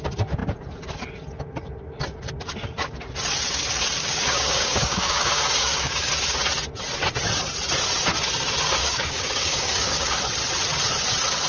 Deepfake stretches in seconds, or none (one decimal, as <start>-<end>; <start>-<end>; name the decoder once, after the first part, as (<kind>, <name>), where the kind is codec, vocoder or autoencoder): 4.0-6.1 (codec, DAC); 8.8-10.2